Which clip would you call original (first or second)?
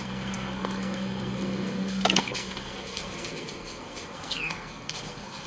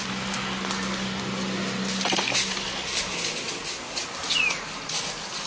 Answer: second